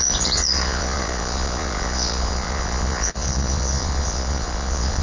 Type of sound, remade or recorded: remade